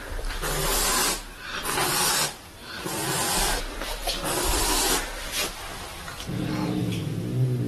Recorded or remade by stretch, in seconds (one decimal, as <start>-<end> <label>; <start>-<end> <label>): 0.0-7.7 recorded